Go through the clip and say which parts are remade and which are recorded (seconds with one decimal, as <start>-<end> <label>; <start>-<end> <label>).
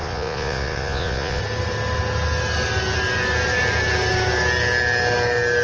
0.0-1.4 remade; 1.4-5.6 recorded